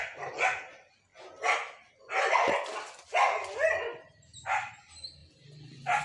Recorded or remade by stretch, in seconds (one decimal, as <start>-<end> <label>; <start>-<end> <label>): 0.0-6.0 recorded